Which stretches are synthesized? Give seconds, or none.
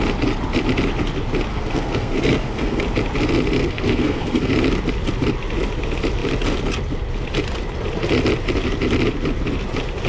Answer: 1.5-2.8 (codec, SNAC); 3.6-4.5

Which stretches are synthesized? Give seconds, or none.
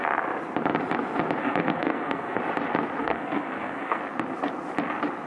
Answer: 1.4-2.4 (codec, SNAC); 3.0-4.0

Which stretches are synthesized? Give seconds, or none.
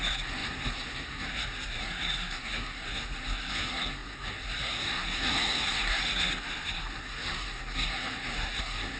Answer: 0.0-9.0 (codec, SNAC)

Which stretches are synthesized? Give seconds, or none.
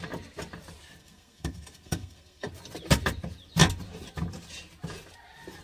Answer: 1.0-2.5 (codec, SNAC)